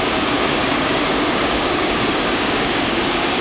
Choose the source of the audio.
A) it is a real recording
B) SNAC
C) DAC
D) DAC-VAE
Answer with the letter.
C